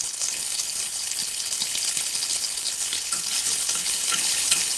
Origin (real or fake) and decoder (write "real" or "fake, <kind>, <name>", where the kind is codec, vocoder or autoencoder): fake, codec, HILCodec